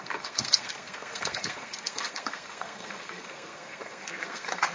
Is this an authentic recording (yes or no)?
no